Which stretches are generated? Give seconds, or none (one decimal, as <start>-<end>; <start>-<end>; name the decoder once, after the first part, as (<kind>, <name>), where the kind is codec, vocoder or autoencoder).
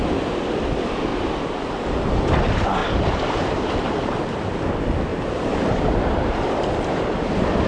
1.1-2.2 (vocoder, BigVGAN v2); 2.8-4.5; 5.1-6.9